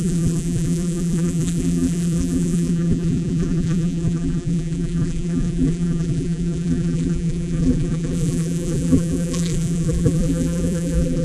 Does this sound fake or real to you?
fake